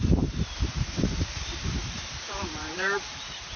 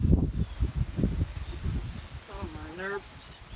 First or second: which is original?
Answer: second